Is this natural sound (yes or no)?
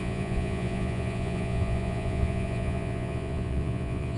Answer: no